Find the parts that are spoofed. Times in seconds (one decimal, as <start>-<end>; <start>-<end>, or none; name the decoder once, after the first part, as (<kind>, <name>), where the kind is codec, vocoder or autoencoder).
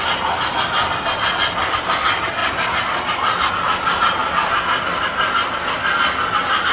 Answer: none